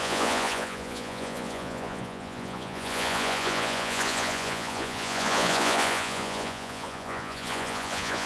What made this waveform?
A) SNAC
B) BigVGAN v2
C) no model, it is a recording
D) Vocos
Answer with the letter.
D